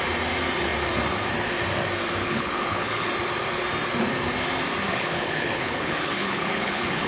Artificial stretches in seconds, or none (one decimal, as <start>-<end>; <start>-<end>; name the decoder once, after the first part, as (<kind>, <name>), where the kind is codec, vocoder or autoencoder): 2.2-3.1 (codec, HILCodec); 4.9-7.1